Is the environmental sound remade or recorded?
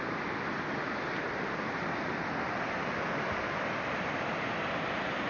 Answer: recorded